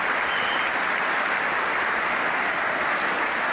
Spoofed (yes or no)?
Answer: no